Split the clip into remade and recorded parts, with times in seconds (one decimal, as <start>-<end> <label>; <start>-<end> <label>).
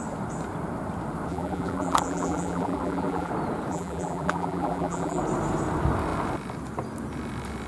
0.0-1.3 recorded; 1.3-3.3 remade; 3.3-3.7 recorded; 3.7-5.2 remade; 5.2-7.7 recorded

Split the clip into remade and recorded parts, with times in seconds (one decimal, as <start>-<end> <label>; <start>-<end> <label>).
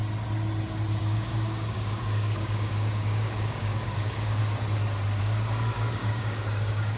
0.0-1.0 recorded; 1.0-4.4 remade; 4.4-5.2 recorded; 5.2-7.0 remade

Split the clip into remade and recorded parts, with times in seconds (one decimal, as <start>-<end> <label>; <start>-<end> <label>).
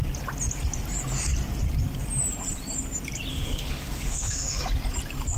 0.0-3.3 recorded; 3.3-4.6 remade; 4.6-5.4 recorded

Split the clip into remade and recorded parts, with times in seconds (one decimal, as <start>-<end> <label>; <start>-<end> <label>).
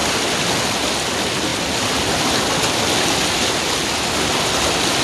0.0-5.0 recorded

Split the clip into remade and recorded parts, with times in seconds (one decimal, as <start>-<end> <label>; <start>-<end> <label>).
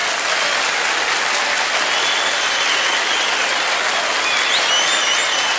0.0-5.6 recorded